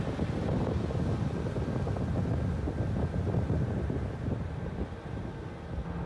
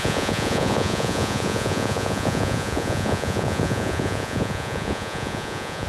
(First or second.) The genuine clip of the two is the first